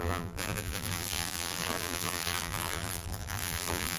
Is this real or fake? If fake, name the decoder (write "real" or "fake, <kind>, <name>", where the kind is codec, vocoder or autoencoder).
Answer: fake, vocoder, BigVGAN v2